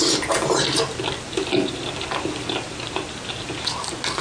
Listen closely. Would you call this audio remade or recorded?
recorded